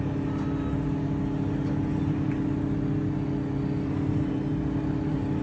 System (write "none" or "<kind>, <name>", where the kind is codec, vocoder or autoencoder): none